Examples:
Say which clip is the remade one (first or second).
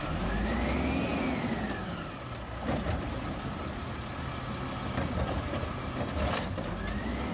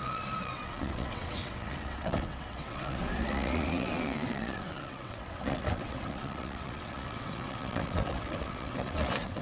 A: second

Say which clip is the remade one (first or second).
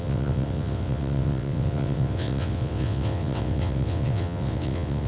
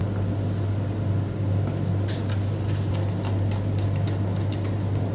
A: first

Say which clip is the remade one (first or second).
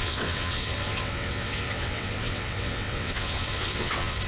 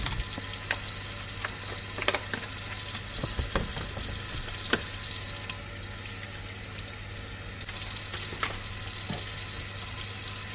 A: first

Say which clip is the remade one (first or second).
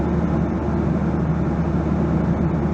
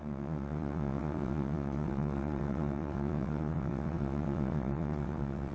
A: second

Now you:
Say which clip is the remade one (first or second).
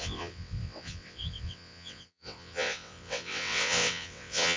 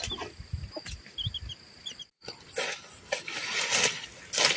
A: first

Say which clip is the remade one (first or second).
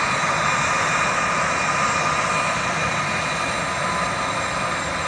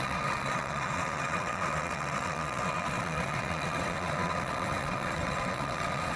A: second